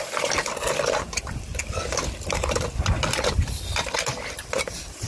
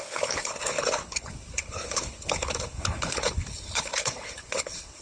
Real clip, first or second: first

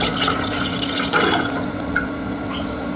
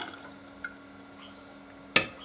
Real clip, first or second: second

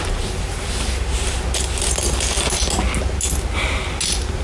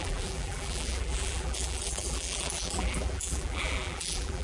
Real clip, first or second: first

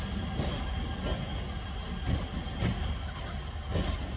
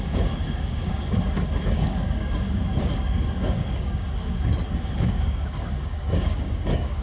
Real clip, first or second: first